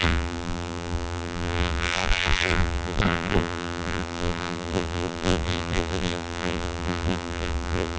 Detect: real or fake fake